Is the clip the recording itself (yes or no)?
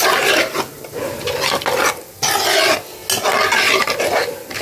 yes